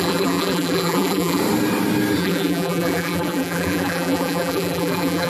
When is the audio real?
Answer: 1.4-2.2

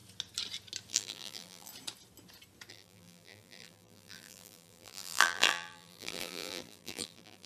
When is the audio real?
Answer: 0.0-0.9; 1.7-2.7

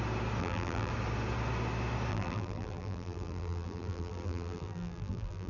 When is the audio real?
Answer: 0.0-0.4; 0.9-2.1

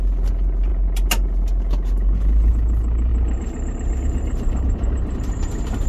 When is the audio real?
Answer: 0.0-3.1; 5.5-5.9

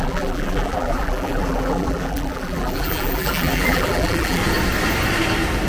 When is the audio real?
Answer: 4.4-5.7

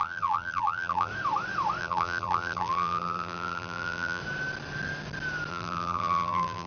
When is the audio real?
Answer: 1.1-1.8; 4.2-5.5